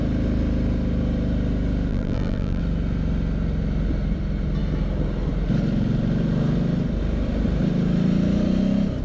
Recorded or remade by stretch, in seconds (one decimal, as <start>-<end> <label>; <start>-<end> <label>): 0.0-1.9 recorded; 1.9-2.6 remade; 2.6-9.0 recorded